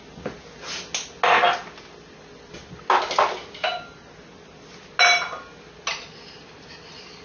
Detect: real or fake real